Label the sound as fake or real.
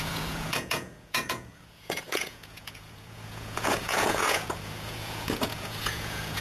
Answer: fake